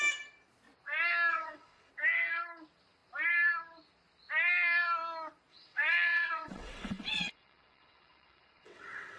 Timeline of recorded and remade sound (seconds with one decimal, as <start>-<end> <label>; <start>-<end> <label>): 0.0-1.3 recorded; 1.3-1.9 remade; 1.9-5.5 recorded; 5.5-9.2 remade